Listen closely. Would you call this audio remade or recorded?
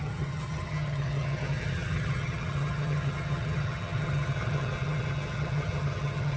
remade